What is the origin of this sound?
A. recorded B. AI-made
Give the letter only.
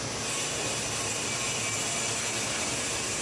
A